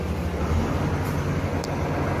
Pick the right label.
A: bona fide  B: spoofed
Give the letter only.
A